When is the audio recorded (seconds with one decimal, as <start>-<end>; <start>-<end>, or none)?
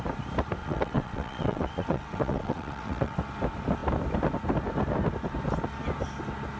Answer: 0.0-0.6; 3.2-6.6